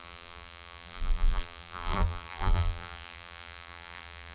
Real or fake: fake